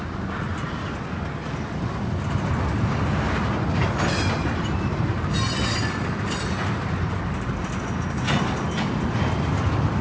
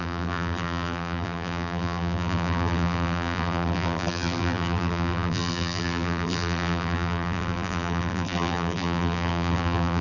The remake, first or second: second